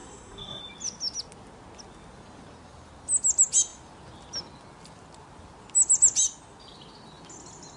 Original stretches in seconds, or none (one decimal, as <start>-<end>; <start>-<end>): 0.6-7.8